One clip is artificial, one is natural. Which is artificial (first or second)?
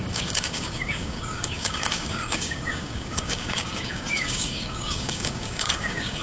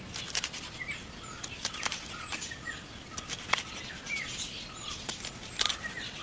first